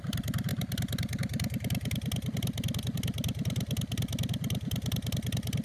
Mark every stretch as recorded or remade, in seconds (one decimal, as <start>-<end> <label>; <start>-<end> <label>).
0.0-5.6 recorded